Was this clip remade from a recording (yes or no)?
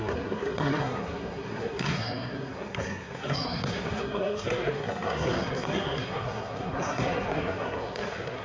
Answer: yes